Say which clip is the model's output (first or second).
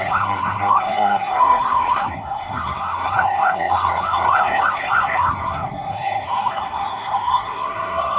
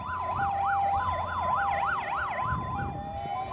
first